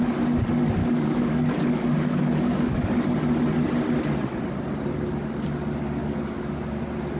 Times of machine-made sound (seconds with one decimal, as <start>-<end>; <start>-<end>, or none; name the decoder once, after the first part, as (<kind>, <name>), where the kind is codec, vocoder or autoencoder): 0.8-2.8 (codec, DAC); 6.0-6.8